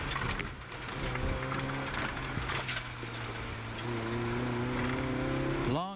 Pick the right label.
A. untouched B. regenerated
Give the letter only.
A